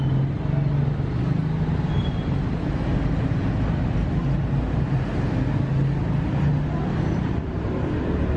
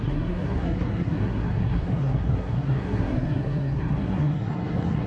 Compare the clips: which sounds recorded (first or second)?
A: first